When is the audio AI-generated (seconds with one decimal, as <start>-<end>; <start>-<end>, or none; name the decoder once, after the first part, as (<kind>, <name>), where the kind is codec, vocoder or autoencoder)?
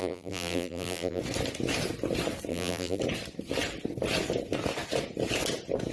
0.0-1.2 (vocoder, BigVGAN v2); 2.5-3.0